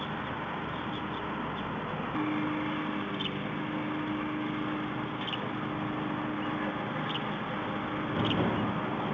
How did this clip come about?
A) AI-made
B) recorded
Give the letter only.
B